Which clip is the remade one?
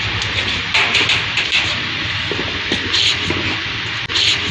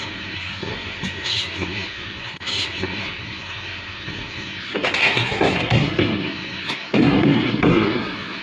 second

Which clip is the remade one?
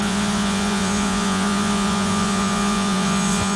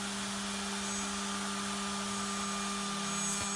first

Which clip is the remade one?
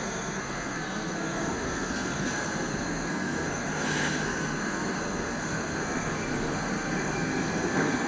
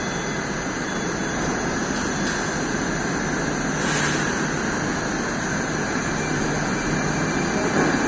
first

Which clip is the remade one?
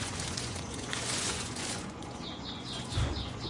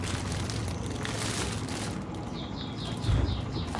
first